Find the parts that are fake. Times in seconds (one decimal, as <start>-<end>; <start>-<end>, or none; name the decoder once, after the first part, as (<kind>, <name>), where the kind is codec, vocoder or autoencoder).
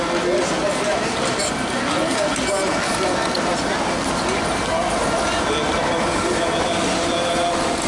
none